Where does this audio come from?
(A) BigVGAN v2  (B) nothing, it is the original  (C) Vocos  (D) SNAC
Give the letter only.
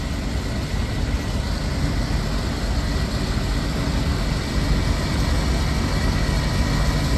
B